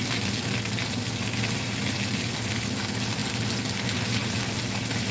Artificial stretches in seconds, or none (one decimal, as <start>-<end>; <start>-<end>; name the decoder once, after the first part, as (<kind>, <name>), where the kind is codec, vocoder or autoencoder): none